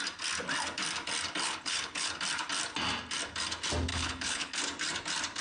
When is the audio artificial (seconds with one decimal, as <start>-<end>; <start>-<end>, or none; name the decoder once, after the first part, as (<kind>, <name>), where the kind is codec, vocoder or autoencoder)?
1.4-2.1 (codec, HILCodec); 3.9-4.6